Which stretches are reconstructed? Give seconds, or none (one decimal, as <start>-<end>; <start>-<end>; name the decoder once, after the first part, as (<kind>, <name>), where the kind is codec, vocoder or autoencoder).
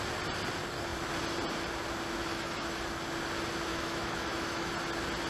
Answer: 2.3-2.8 (autoencoder, DAC-VAE); 3.7-4.7